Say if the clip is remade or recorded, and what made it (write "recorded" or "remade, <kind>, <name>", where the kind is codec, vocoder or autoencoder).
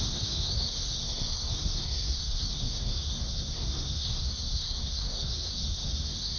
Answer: remade, codec, SNAC